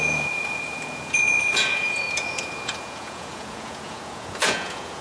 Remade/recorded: remade